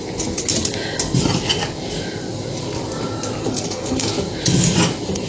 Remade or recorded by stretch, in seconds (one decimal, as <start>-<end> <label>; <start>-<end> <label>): 0.0-3.4 recorded; 3.4-4.1 remade; 4.1-5.3 recorded